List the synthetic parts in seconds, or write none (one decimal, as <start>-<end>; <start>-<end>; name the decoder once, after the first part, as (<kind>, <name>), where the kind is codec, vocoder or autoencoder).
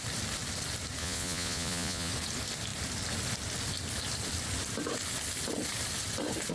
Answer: 1.0-2.1 (vocoder, Vocos)